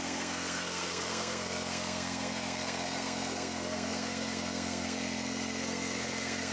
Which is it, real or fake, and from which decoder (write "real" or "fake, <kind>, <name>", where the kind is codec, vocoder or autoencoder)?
fake, codec, SNAC